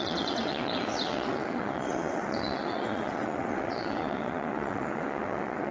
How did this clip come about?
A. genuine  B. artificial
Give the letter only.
B